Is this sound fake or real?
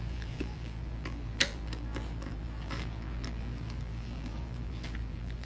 fake